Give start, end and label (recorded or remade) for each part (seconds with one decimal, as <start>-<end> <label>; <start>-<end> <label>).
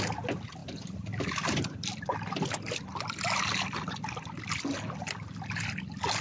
0.0-6.2 recorded